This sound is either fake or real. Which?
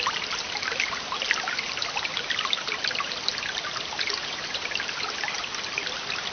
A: fake